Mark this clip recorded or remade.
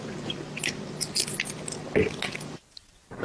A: recorded